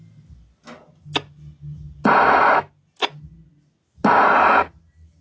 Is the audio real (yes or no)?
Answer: yes